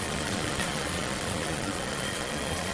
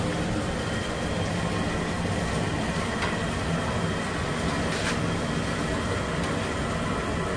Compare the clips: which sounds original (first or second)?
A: second